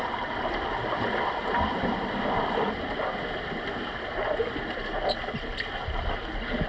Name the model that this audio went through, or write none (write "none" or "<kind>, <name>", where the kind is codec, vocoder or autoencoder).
none